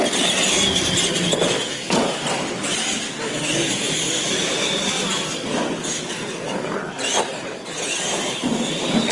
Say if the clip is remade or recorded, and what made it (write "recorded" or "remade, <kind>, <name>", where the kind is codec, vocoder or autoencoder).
recorded